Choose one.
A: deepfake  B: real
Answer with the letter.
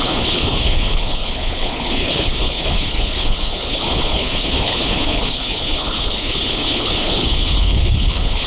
A